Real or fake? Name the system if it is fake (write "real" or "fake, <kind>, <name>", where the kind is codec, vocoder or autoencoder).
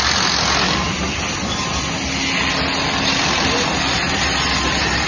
real